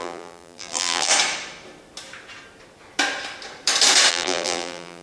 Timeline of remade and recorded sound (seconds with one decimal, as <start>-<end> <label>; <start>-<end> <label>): 0.0-1.1 remade; 1.1-4.1 recorded; 4.1-5.0 remade